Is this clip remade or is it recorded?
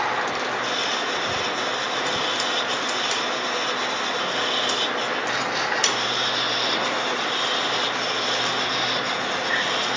recorded